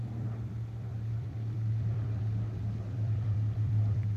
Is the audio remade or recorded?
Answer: remade